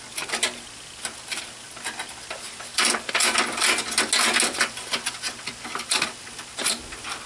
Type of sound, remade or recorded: recorded